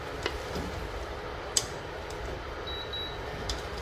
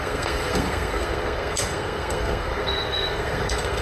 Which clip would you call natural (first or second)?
first